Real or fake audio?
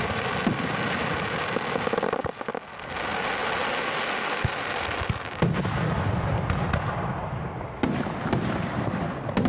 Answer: real